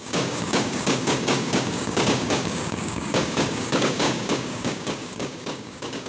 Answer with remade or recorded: remade